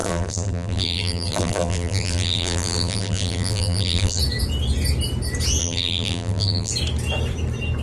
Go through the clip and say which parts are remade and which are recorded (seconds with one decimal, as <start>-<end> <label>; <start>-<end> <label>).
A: 0.0-4.2 remade; 4.2-5.6 recorded; 5.6-6.7 remade; 6.7-7.8 recorded